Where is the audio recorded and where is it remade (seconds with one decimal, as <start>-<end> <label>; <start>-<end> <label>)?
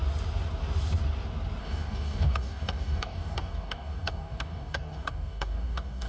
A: 0.0-1.6 recorded; 1.6-6.1 remade